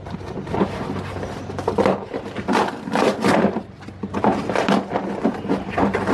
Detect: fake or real real